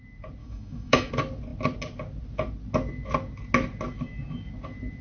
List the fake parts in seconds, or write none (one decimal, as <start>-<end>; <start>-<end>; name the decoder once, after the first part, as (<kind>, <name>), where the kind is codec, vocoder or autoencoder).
0.4-1.1 (autoencoder, DAC-VAE)

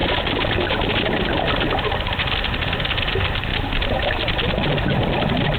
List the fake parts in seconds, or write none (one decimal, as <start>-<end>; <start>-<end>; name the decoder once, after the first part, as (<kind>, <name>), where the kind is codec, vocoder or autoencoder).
none